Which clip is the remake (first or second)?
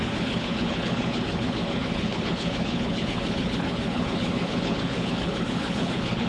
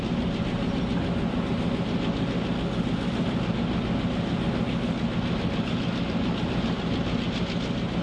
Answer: first